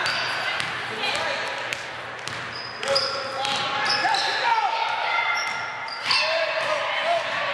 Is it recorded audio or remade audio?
recorded